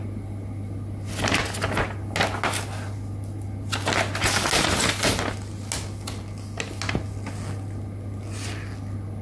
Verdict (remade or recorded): recorded